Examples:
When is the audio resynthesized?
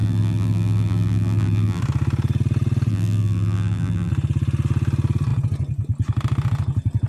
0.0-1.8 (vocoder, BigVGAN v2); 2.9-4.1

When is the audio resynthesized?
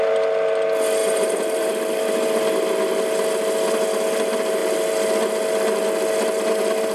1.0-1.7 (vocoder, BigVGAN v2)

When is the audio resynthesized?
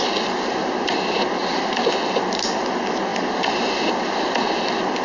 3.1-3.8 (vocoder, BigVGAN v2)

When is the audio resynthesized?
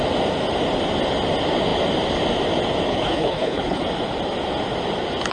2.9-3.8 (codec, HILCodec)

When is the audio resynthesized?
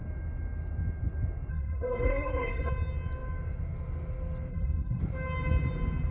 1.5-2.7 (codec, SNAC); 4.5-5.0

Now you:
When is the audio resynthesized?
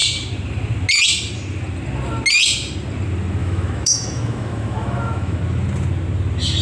3.4-5.4 (autoencoder, DAC-VAE)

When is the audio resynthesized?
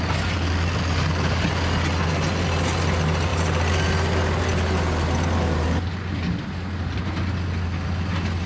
none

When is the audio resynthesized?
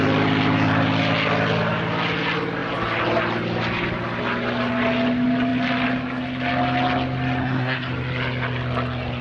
7.4-7.9 (codec, SNAC)